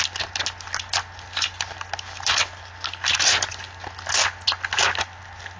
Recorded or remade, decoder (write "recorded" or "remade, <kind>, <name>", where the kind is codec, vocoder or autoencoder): recorded